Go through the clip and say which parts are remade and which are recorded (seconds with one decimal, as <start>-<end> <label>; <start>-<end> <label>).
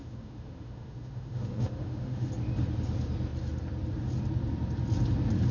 0.0-2.3 remade; 2.3-5.5 recorded